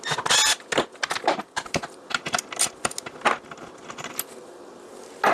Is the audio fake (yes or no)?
no